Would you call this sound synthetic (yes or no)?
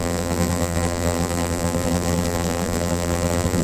yes